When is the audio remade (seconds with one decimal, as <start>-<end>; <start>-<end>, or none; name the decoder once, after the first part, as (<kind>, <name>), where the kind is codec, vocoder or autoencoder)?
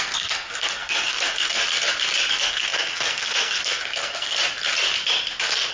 0.0-1.6 (codec, SNAC); 2.3-4.4